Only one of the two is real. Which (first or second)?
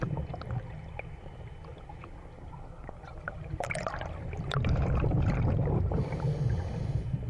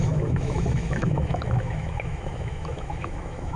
first